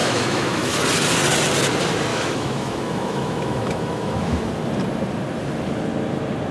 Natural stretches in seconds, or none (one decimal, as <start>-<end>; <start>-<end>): 0.8-2.1; 4.4-6.5